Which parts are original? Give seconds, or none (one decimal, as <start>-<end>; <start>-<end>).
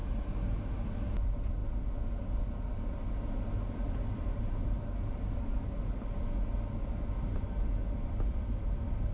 0.0-9.1